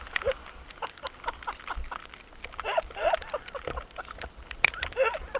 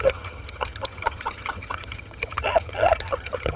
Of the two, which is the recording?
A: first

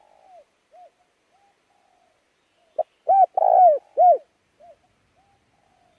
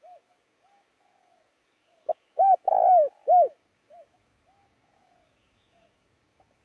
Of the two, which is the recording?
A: first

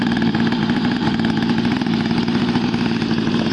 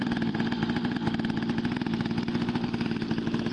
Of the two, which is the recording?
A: second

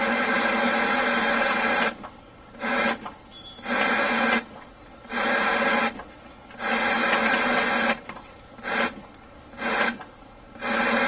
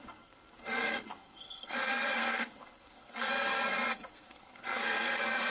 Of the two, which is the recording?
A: first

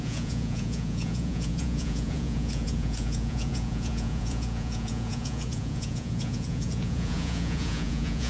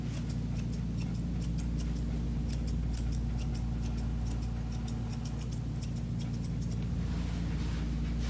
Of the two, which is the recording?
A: second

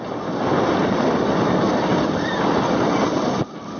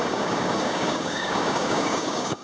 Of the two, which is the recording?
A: first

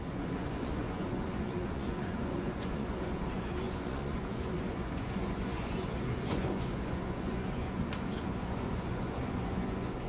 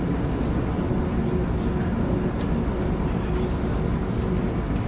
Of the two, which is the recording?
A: second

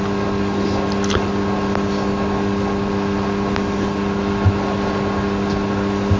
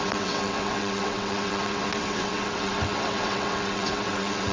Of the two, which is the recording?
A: first